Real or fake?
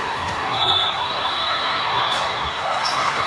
fake